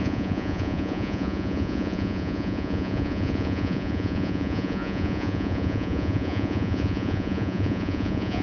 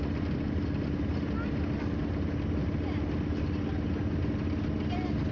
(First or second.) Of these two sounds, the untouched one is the second